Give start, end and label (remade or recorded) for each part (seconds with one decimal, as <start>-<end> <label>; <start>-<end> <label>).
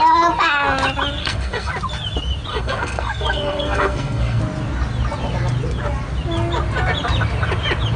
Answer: 0.0-1.2 recorded; 1.2-1.7 remade; 1.7-2.5 recorded; 2.5-4.4 remade; 4.4-8.0 recorded